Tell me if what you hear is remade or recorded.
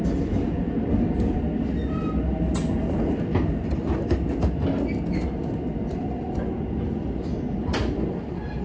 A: recorded